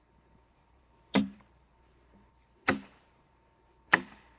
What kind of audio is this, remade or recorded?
remade